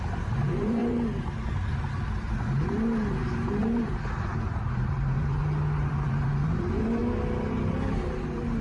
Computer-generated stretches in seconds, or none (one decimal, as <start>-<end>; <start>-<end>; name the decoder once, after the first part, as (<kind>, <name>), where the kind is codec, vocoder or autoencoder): 0.0-5.4 (vocoder, BigVGAN v2); 5.9-7.0; 7.5-8.6